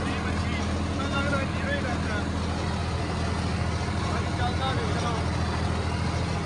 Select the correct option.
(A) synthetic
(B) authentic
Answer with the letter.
B